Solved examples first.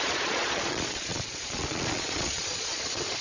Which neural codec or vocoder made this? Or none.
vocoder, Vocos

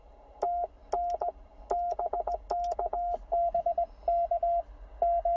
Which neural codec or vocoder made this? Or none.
none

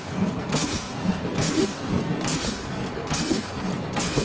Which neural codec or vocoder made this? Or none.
codec, SNAC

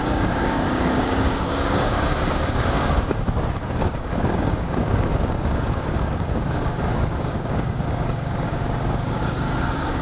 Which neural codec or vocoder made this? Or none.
codec, DAC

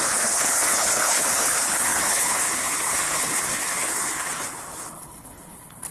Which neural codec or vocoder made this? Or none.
codec, HILCodec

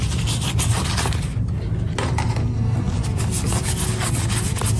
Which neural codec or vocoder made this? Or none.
none